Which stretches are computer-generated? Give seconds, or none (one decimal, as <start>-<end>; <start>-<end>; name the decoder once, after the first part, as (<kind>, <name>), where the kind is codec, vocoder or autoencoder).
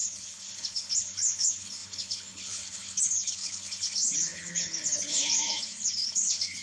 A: 0.0-6.6 (codec, HILCodec)